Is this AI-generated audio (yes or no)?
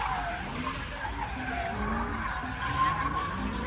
no